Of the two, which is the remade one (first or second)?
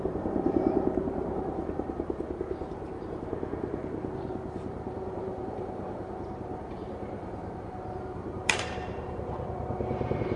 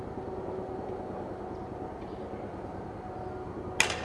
first